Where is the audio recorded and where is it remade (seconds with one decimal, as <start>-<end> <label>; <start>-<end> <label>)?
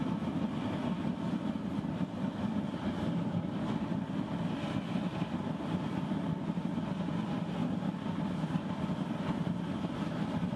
0.0-10.6 recorded